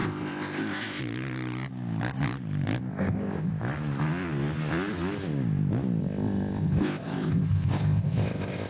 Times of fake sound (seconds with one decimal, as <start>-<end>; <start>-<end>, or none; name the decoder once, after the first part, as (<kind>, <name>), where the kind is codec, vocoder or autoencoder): 0.0-1.0 (codec, ZipCodec); 2.9-3.5; 6.0-8.7